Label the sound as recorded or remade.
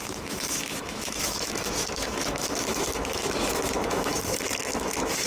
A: remade